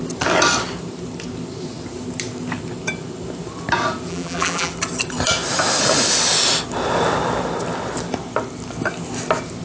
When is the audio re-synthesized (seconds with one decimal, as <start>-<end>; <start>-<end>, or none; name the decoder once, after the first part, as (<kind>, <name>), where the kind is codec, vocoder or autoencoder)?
4.1-4.7 (vocoder, BigVGAN v2)